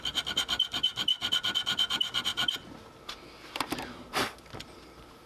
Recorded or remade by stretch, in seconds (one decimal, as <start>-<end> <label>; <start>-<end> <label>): 0.0-5.3 recorded